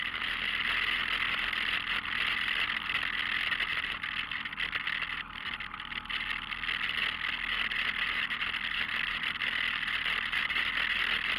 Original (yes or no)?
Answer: yes